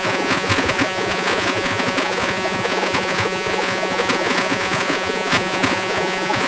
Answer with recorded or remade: remade